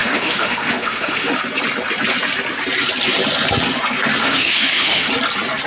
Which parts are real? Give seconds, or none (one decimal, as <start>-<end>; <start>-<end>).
1.3-4.2; 5.1-5.7